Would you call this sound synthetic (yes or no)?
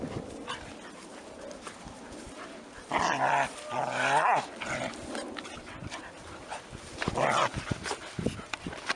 no